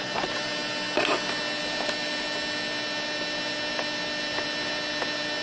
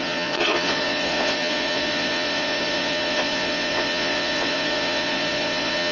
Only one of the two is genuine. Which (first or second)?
first